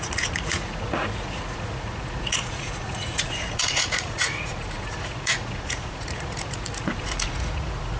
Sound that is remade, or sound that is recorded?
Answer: remade